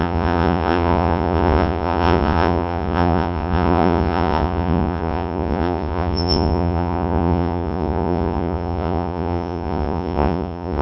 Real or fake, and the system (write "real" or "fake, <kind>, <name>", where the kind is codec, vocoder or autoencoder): fake, vocoder, Vocos